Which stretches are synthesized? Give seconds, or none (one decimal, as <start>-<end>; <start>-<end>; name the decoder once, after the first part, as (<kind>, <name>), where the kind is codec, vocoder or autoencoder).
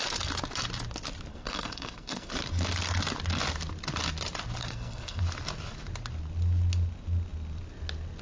1.3-2.3 (codec, SNAC); 4.6-5.2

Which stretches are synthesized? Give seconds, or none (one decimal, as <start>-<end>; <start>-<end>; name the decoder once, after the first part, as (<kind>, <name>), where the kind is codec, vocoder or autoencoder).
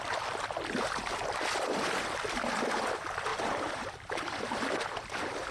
3.3-5.5 (vocoder, BigVGAN v2)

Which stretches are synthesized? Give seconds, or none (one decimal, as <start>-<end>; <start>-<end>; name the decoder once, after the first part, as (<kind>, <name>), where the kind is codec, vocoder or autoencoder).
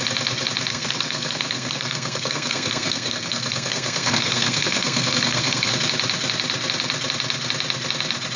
0.7-5.7 (codec, SNAC)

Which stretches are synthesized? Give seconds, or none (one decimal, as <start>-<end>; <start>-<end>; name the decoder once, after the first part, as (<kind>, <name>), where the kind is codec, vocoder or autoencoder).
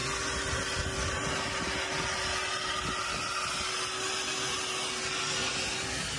none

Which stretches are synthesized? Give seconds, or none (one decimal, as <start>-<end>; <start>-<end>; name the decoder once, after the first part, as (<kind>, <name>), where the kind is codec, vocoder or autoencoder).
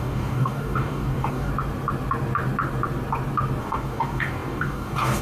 0.0-1.5 (codec, DAC); 3.6-5.2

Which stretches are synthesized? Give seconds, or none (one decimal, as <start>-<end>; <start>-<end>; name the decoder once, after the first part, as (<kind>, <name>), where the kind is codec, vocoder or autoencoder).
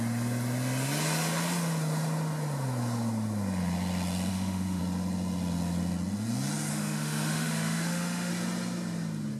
4.3-4.8 (autoencoder, DAC-VAE); 6.7-8.3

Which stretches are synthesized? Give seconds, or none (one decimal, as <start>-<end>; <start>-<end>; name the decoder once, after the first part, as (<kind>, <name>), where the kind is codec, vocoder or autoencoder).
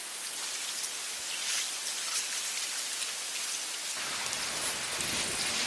none